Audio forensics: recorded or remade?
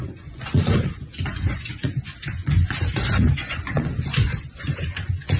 remade